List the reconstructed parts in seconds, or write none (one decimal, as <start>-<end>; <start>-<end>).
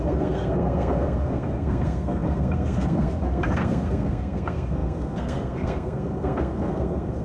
0.0-7.2